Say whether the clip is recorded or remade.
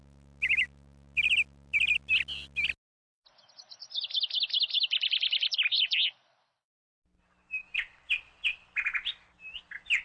recorded